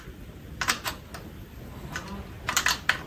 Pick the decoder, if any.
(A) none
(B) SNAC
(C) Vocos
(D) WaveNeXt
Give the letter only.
A